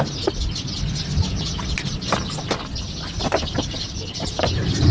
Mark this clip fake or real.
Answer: real